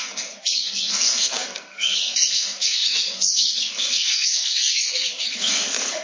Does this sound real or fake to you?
fake